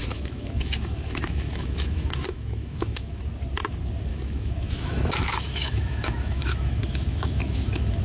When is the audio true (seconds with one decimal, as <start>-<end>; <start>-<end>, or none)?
3.2-4.1